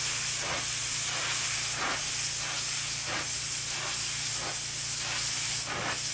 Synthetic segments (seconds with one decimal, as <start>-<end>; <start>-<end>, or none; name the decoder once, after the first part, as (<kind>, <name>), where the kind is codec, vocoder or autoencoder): none